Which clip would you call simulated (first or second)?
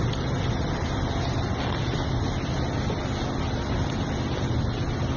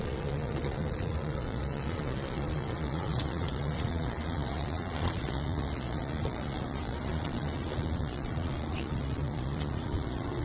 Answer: second